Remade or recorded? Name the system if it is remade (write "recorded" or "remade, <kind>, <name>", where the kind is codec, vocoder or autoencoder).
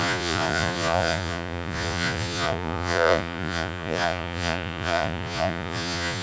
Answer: remade, vocoder, Vocos